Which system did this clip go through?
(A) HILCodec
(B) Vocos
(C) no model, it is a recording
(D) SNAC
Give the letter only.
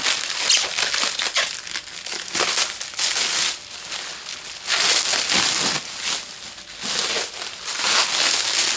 C